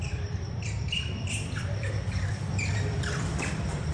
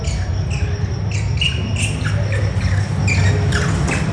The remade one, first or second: first